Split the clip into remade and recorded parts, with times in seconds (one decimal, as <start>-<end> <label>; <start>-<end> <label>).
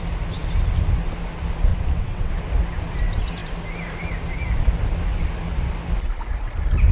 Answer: 0.0-1.7 recorded; 1.7-2.3 remade; 2.3-6.9 recorded